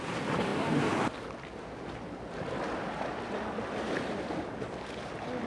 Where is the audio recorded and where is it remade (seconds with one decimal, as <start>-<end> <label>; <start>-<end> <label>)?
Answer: 0.0-5.5 recorded